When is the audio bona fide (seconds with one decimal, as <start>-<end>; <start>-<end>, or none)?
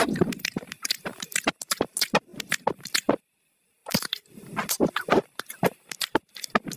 0.0-6.8